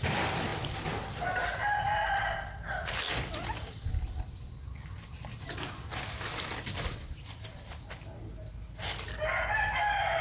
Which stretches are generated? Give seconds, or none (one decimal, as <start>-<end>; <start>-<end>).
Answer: none